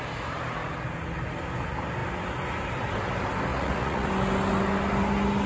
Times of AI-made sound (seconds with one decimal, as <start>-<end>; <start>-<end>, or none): 3.5-4.1